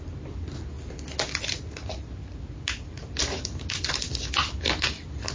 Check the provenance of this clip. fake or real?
real